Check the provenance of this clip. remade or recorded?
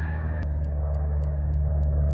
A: remade